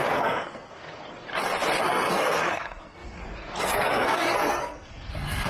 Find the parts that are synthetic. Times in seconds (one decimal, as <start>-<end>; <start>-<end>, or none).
0.0-1.3; 1.8-5.5